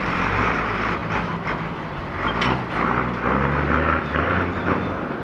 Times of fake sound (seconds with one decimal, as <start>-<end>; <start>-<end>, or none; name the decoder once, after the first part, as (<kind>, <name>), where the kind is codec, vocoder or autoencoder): 0.0-1.0 (vocoder, BigVGAN v2); 4.0-5.2